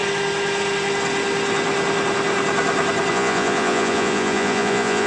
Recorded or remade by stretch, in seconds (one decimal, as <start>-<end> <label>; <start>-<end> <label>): 0.0-3.1 recorded; 3.1-5.1 remade